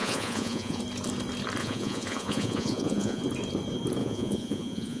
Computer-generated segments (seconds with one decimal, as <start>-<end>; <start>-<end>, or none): 0.0-0.8; 1.6-3.2; 4.0-5.0